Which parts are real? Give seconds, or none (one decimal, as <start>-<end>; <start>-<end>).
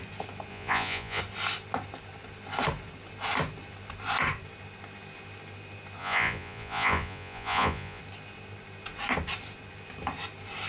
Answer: 0.0-0.5; 1.2-6.0; 8.0-10.7